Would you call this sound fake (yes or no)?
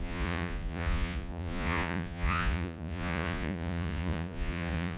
yes